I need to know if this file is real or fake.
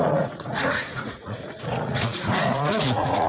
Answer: fake